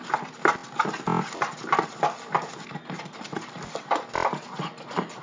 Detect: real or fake real